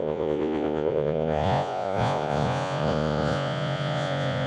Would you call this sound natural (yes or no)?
no